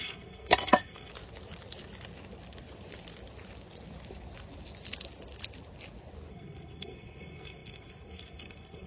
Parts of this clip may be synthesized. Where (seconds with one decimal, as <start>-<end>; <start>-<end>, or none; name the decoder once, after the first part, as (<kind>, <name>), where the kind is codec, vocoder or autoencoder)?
0.0-1.1 (codec, SNAC); 6.3-8.9